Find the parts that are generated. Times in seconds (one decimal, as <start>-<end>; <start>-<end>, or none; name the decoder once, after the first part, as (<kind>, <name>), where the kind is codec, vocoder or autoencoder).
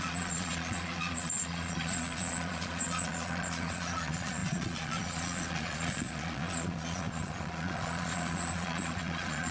0.0-9.5 (vocoder, Vocos)